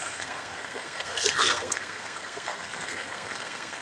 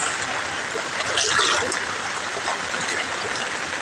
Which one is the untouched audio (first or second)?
second